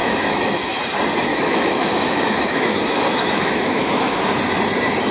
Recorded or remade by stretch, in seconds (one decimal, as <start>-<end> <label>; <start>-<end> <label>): 0.0-0.8 remade; 0.8-1.3 recorded; 1.3-4.2 remade; 4.2-5.1 recorded